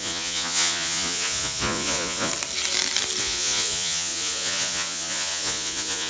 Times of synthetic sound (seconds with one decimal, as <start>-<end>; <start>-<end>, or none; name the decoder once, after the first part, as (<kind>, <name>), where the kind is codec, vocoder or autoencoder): 0.0-2.3 (vocoder, Vocos); 3.2-6.1